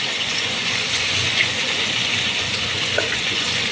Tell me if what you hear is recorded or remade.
remade